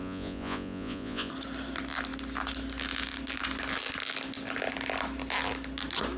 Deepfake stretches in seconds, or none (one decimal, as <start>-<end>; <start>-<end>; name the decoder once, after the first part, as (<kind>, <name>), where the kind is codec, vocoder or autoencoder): 0.0-1.3 (vocoder, Vocos)